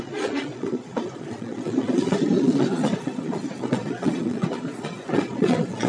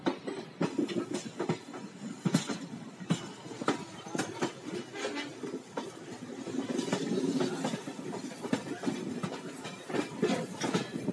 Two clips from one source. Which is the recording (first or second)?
second